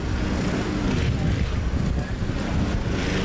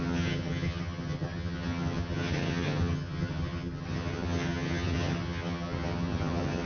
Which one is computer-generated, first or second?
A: second